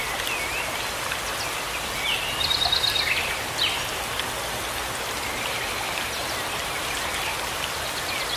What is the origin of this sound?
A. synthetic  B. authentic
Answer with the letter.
B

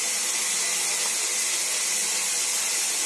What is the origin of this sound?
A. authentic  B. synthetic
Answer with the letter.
A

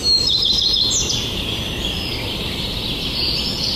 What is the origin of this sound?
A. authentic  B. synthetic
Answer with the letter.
A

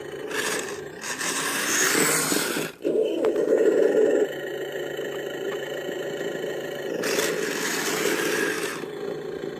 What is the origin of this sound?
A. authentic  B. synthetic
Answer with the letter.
A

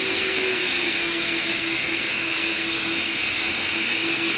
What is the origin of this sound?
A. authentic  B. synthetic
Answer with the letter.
B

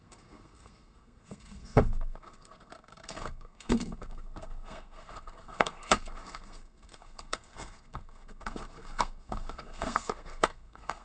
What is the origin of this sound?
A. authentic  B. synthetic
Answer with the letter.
B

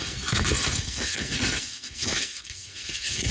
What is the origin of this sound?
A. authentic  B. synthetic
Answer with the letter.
B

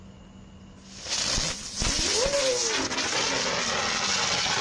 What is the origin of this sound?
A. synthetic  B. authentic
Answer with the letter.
B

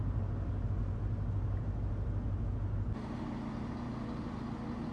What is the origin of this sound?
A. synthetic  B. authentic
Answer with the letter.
B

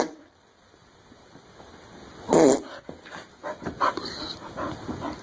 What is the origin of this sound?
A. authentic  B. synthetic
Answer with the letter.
A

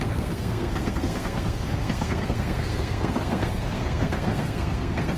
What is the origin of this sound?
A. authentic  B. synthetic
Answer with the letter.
B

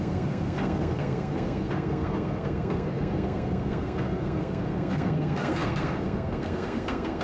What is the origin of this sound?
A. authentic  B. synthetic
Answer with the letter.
B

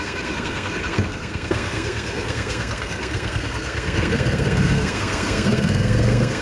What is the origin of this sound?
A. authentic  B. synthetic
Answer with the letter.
B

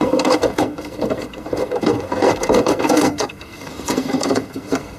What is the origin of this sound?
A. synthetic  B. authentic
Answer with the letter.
A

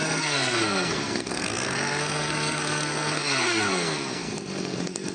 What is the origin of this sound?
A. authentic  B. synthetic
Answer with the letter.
B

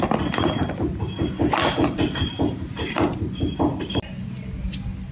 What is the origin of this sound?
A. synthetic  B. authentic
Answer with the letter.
B